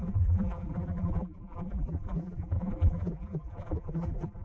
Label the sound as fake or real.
fake